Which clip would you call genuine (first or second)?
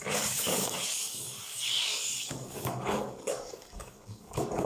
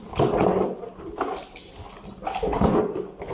second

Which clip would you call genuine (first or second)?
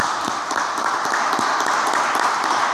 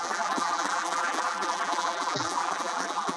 first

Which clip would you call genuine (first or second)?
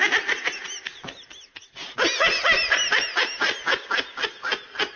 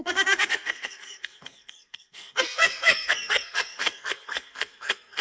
first